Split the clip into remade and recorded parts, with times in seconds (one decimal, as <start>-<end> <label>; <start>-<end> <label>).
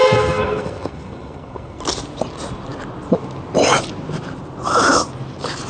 0.0-1.8 remade; 1.8-5.7 recorded